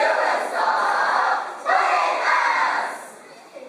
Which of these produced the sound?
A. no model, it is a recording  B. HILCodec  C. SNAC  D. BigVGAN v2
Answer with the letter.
D